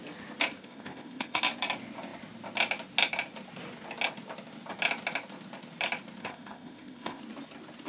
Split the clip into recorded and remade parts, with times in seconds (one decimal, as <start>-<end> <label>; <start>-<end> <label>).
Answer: 0.0-0.6 recorded; 0.6-1.4 remade; 1.4-6.2 recorded; 6.2-7.2 remade; 7.2-7.9 recorded